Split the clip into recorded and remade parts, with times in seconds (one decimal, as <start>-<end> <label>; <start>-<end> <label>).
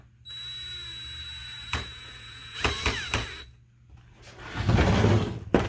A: 0.0-1.4 recorded; 1.4-2.7 remade; 2.7-5.7 recorded